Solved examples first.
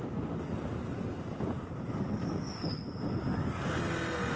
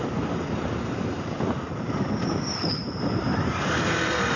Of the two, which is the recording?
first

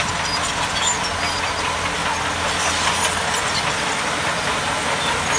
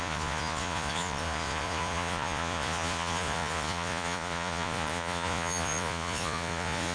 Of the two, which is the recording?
first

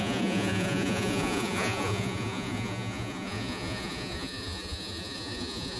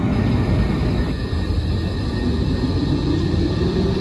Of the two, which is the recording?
second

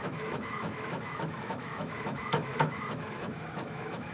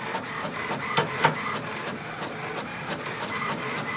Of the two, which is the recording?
second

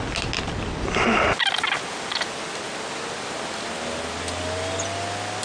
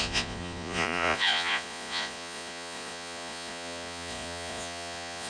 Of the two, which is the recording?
first